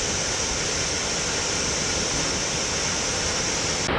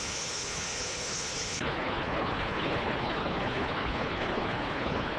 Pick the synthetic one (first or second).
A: second